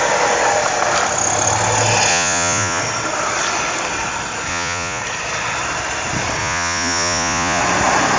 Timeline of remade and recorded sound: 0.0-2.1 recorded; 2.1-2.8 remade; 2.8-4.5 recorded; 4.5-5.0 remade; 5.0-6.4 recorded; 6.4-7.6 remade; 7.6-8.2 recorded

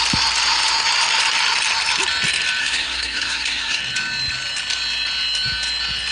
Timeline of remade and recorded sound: 0.0-2.6 recorded; 2.6-3.8 remade; 3.8-6.1 recorded